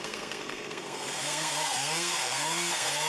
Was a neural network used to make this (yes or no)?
yes